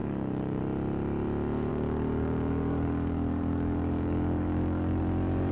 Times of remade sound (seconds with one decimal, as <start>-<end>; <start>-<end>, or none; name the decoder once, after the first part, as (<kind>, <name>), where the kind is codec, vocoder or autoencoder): 0.0-0.6 (codec, DAC); 1.7-5.0